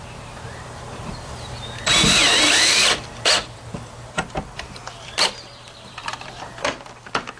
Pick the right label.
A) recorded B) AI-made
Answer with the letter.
B